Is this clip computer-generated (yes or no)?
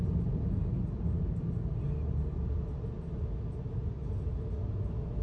no